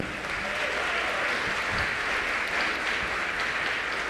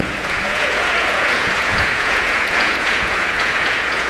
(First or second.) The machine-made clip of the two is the second